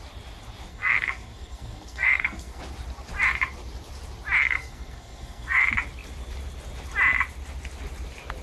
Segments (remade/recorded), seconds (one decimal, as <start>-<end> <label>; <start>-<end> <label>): 0.0-0.7 recorded; 0.7-2.6 remade; 2.6-4.4 recorded; 4.4-5.6 remade; 5.6-8.4 recorded